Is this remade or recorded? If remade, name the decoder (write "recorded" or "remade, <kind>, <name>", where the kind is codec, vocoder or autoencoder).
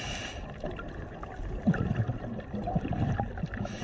recorded